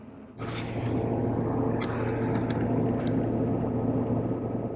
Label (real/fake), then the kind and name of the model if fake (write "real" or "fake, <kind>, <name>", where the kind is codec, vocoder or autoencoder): real